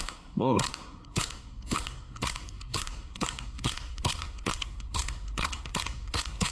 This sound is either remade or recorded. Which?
remade